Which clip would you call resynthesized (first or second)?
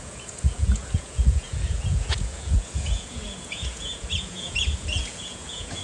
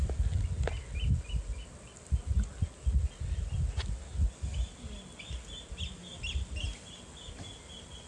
first